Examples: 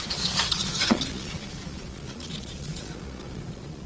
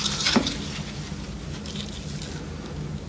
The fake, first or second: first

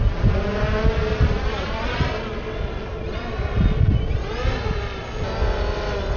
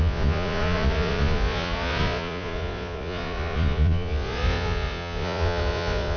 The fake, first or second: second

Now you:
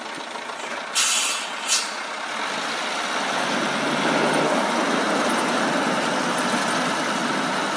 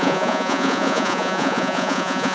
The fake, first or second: second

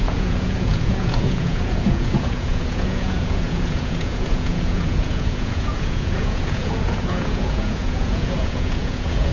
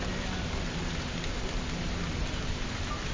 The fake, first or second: first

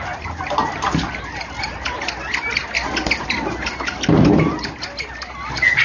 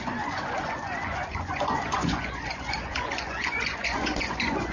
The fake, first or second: second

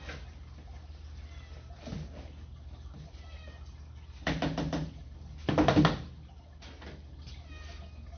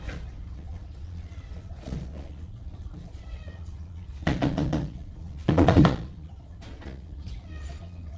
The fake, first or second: second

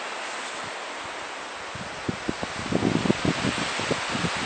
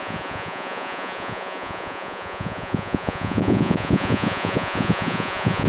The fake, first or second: second